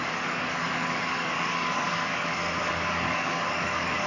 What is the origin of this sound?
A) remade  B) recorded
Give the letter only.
A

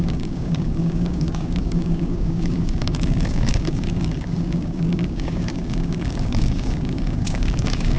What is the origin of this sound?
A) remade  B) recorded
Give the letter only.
A